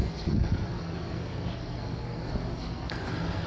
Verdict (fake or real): fake